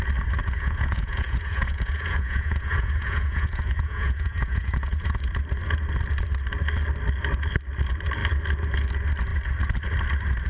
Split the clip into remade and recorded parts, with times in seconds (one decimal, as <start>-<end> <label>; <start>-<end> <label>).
0.0-0.4 recorded; 0.4-5.3 remade; 5.3-10.5 recorded